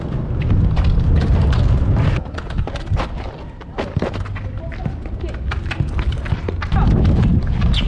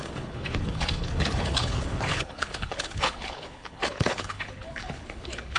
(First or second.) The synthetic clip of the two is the second